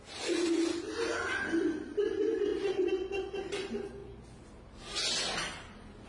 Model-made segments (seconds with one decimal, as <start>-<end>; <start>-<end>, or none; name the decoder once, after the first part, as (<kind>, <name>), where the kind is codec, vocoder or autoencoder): none